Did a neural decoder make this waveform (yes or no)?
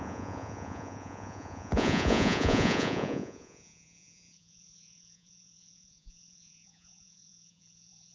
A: yes